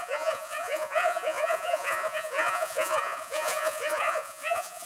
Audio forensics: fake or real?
fake